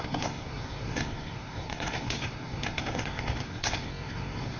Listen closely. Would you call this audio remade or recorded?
remade